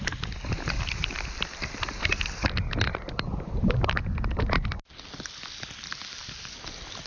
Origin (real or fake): real